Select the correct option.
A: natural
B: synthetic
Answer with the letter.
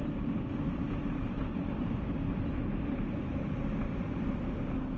A